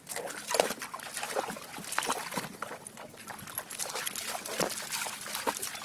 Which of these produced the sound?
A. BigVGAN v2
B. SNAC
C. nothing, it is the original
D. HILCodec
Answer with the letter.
C